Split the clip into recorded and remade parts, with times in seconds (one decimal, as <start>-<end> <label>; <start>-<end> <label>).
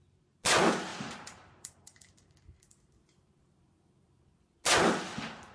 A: 0.0-0.9 recorded; 0.9-4.2 remade; 4.2-5.5 recorded